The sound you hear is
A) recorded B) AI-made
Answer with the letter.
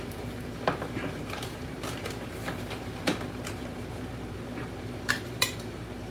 B